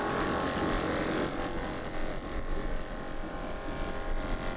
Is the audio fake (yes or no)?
no